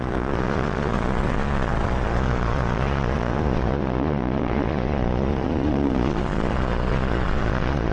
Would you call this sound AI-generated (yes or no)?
yes